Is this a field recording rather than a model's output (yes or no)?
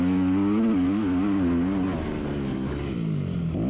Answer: yes